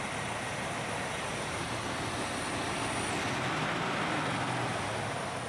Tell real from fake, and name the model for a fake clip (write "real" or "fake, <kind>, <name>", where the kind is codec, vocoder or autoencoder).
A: real